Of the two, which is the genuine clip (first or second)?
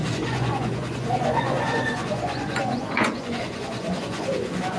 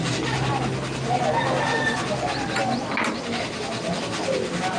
second